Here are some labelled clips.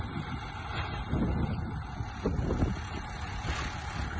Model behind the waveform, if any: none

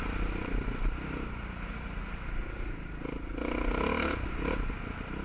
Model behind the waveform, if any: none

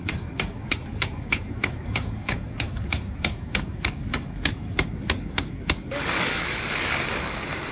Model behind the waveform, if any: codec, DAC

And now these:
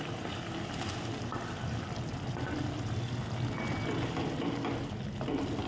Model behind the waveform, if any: none